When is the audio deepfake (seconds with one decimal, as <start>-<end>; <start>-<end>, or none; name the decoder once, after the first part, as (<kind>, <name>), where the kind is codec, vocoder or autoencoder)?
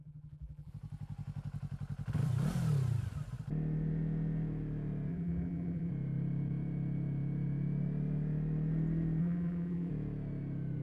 0.0-0.7 (vocoder, BigVGAN v2); 5.1-5.9; 9.2-9.9